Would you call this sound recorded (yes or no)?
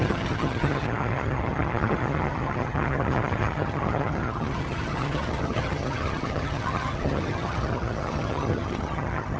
no